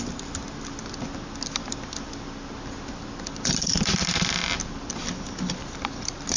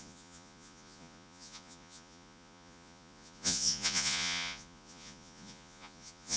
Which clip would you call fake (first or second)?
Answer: second